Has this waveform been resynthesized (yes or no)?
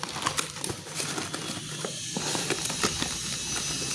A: no